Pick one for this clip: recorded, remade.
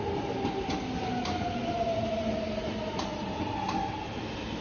recorded